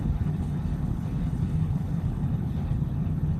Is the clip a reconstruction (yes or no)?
yes